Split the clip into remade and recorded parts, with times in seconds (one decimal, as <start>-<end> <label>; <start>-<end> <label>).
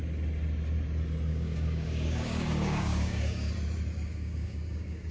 0.0-1.3 recorded; 1.3-3.5 remade; 3.5-4.1 recorded; 4.1-5.1 remade